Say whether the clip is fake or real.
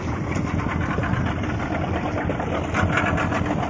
real